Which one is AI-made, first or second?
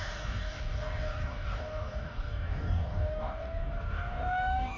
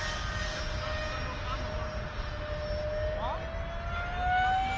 first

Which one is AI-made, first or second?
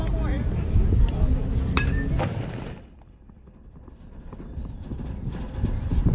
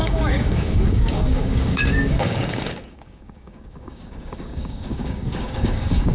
second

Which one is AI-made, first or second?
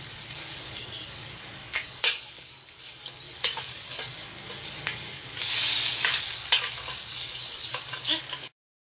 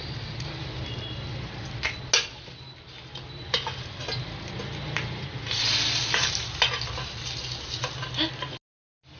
first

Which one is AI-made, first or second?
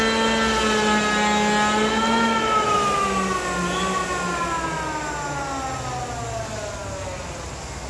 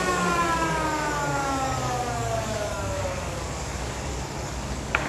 second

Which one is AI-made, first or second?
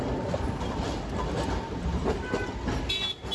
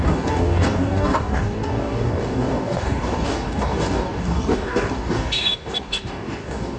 second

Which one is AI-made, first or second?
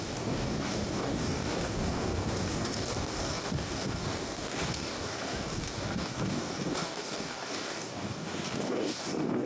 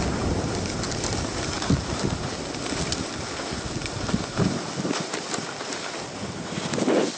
first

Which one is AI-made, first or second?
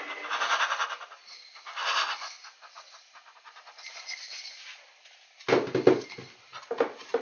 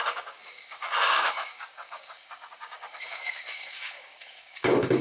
second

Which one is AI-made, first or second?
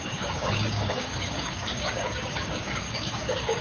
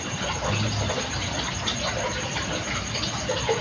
first